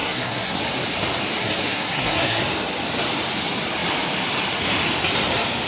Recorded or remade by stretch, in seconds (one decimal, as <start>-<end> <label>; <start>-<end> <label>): 0.0-0.6 remade; 0.6-1.4 recorded; 1.4-2.4 remade; 2.4-5.7 recorded